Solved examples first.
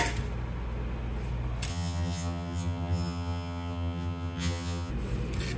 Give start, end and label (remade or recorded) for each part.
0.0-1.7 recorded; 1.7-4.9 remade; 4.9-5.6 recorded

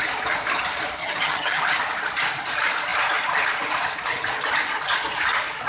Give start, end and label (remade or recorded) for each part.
0.0-1.0 recorded; 1.0-1.6 remade; 1.6-5.7 recorded